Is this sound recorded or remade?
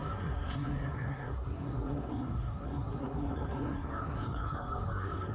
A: remade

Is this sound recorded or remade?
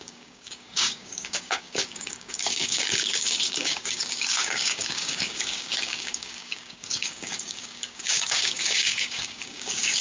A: remade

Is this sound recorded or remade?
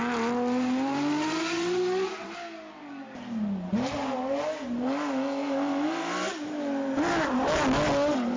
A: recorded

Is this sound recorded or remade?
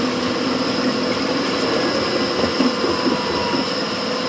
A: recorded